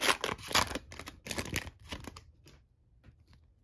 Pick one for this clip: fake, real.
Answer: real